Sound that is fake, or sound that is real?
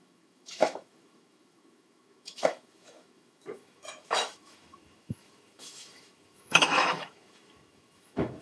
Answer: fake